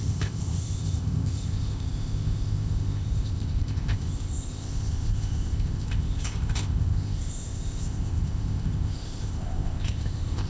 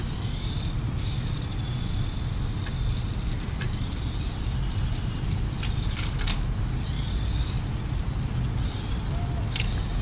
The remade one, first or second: first